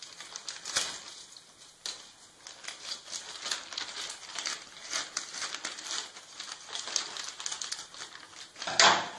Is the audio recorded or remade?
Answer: recorded